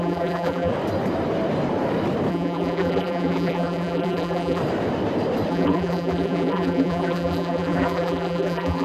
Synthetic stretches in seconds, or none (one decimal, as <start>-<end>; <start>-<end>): 0.0-0.7; 2.3-4.6; 5.5-8.8